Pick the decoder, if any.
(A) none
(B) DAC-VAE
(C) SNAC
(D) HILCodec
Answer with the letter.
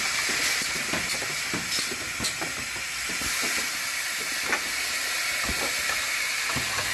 A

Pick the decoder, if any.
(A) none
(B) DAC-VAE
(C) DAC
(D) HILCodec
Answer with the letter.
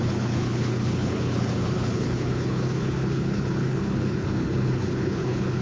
D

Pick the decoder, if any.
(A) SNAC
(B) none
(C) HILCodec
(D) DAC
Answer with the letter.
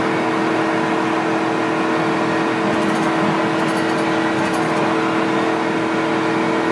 B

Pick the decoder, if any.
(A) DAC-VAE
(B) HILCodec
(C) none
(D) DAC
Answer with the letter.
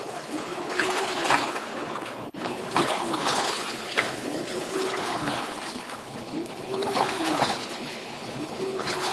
B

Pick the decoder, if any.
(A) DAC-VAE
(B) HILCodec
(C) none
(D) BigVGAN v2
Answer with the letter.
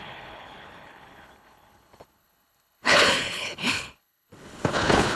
B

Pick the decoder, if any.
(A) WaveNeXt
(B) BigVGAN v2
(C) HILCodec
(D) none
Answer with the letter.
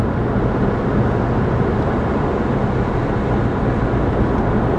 D